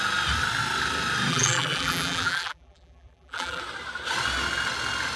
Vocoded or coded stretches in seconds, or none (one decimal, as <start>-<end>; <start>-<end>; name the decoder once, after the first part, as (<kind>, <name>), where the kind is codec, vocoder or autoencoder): 1.3-3.6 (vocoder, BigVGAN v2)